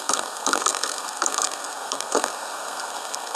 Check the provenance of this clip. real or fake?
fake